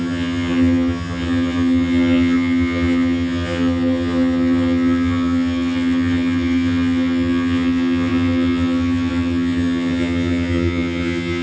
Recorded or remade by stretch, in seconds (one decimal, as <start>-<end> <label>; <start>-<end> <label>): 0.0-11.4 remade